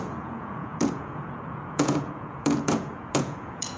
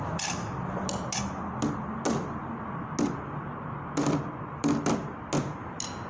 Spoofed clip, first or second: first